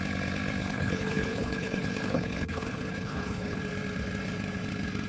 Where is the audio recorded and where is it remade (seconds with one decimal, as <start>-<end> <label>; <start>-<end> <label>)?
0.0-0.6 recorded; 0.6-3.6 remade; 3.6-5.1 recorded

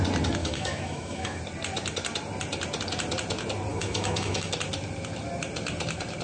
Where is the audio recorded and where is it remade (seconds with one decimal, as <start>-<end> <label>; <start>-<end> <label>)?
0.0-0.4 recorded; 0.4-1.4 remade; 1.4-3.7 recorded; 3.7-4.5 remade; 4.5-6.2 recorded

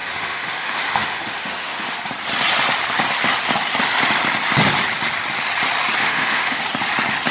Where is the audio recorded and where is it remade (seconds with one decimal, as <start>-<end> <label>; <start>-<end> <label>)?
0.0-2.1 remade; 2.1-6.0 recorded; 6.0-6.6 remade; 6.6-7.3 recorded

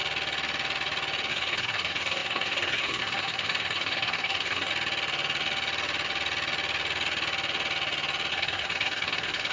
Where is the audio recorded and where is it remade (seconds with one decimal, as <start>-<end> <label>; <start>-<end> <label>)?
0.0-1.3 recorded; 1.3-4.7 remade; 4.7-8.3 recorded; 8.3-9.5 remade